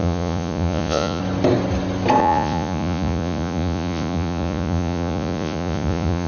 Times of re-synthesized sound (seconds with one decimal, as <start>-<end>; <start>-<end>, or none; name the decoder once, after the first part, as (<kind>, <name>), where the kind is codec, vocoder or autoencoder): 0.0-1.2 (vocoder, Vocos); 2.2-6.3